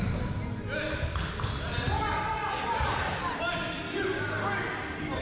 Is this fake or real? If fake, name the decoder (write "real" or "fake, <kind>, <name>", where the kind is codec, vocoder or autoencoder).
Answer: real